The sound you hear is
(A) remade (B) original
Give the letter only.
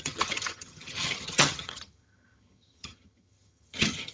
A